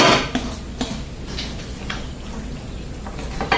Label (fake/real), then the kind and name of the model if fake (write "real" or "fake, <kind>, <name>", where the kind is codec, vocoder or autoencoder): real